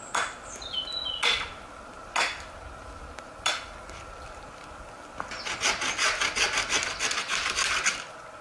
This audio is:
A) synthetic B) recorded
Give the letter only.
B